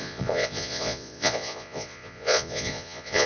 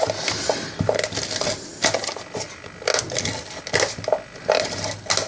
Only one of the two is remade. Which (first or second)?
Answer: first